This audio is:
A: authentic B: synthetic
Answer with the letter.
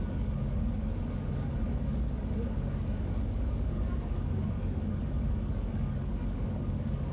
B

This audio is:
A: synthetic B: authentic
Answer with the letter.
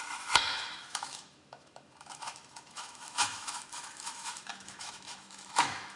A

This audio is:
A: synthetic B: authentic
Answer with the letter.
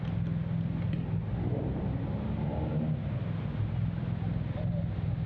B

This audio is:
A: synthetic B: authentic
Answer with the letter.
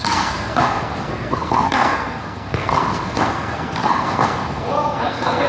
A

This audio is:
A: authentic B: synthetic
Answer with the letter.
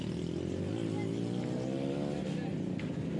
A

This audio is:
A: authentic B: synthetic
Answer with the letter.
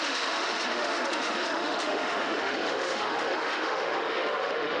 B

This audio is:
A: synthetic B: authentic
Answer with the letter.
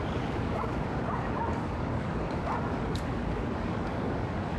A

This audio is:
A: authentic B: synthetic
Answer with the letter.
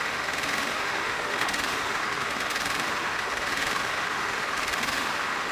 B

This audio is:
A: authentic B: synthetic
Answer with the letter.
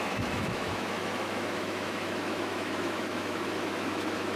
B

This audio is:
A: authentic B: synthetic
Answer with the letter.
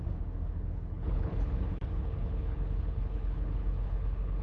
B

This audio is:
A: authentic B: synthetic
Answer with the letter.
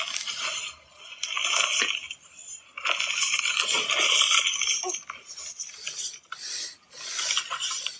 A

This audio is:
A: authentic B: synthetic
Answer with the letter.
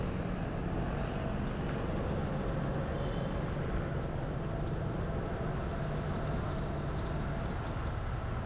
A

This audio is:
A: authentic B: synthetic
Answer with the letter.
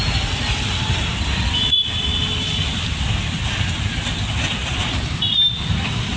A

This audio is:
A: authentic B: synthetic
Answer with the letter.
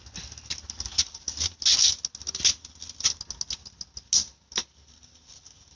A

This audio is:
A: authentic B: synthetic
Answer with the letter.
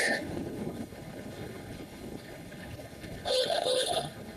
B